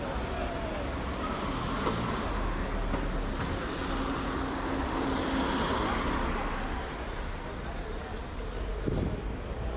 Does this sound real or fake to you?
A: real